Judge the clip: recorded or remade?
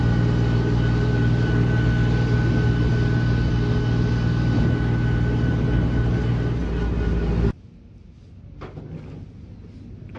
recorded